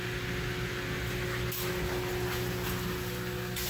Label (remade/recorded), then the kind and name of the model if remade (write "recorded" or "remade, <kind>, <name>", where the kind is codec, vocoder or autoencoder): recorded